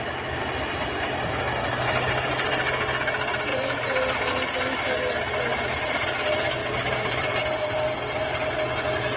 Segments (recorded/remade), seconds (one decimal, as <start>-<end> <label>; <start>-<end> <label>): 0.0-3.5 recorded; 3.5-4.3 remade; 4.3-6.6 recorded; 6.6-7.4 remade; 7.4-9.2 recorded